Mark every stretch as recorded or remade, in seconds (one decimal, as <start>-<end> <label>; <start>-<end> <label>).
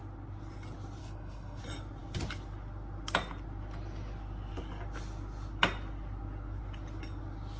0.0-1.0 recorded; 1.0-1.6 remade; 1.6-7.6 recorded